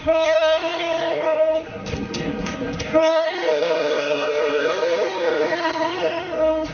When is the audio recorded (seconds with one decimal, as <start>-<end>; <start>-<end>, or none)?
none